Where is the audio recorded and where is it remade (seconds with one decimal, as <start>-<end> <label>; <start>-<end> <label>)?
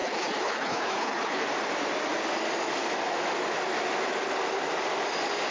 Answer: 0.0-1.4 remade; 1.4-5.5 recorded